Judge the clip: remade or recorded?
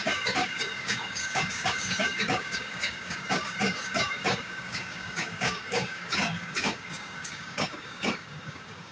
remade